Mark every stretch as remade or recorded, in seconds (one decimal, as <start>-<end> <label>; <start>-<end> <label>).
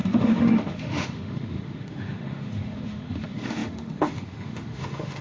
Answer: 0.0-5.2 remade